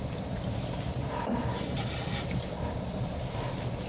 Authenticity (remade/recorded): recorded